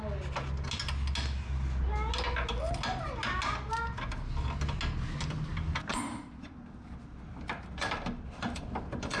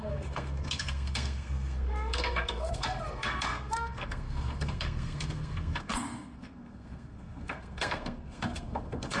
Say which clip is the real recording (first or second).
first